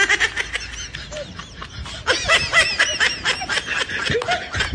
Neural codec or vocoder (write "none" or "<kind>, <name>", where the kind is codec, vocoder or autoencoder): none